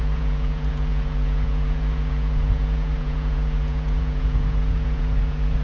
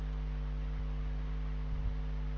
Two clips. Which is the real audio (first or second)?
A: second